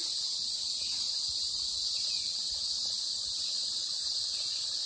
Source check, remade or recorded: recorded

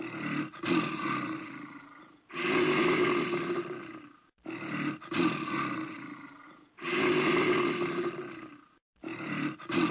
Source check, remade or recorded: recorded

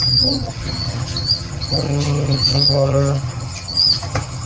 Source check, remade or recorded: remade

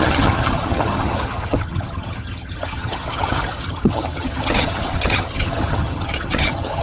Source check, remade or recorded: remade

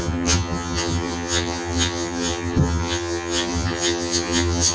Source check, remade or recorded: remade